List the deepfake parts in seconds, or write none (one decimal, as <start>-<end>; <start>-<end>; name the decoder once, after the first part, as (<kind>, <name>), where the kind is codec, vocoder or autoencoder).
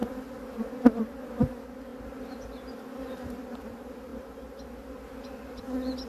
none